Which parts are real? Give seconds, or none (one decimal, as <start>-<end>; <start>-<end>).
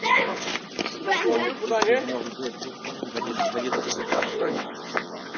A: 0.5-3.7